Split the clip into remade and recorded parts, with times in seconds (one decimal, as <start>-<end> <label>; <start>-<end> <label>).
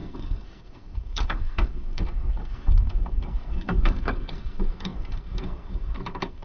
0.0-6.4 remade